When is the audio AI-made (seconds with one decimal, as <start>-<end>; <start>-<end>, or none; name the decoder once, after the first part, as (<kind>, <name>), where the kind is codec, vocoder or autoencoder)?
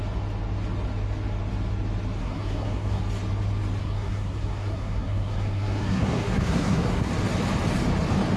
2.2-3.0 (codec, SNAC); 3.8-7.1